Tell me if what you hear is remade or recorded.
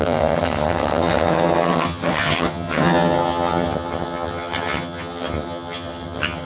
remade